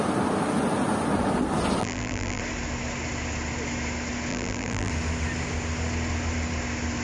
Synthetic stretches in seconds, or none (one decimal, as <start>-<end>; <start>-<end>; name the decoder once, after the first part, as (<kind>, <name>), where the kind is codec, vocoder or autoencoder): 1.8-2.4 (vocoder, BigVGAN v2); 4.3-4.9